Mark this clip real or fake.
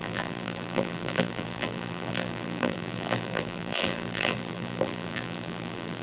fake